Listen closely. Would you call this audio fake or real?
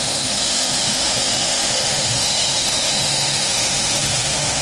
fake